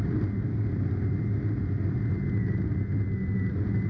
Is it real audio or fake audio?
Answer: real